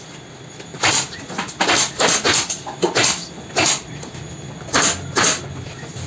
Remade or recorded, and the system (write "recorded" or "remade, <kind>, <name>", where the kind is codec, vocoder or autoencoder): recorded